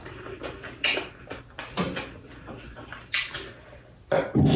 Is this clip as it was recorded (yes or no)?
yes